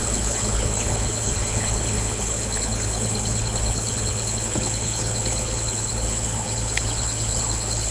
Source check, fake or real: fake